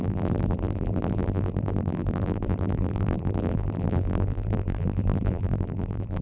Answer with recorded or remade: remade